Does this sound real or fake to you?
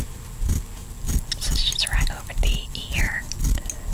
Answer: real